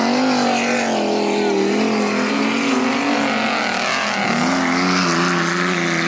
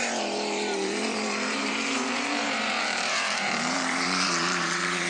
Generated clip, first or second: second